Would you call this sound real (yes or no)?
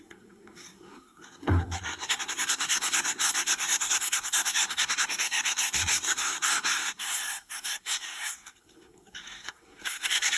no